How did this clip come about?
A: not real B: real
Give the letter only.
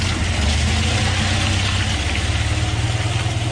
B